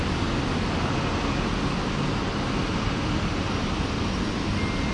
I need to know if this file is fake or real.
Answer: real